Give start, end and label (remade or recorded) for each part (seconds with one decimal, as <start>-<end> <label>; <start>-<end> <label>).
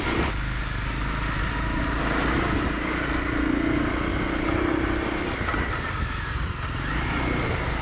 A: 0.0-7.8 recorded